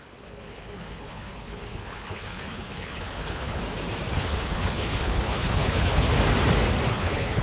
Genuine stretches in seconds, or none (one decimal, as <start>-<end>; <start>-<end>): 3.6-4.1; 6.1-6.9